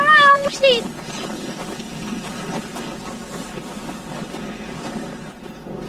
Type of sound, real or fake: real